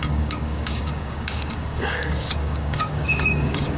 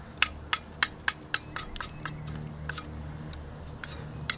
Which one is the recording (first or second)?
second